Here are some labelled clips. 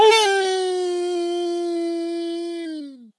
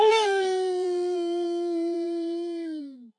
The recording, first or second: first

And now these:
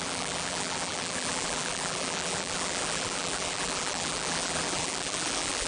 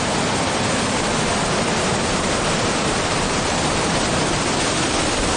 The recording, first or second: second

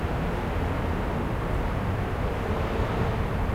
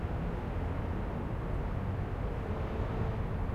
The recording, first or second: second